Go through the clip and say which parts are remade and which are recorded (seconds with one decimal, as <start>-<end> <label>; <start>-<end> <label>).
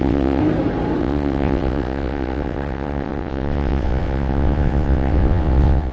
0.0-0.4 remade; 0.4-1.0 recorded; 1.0-5.9 remade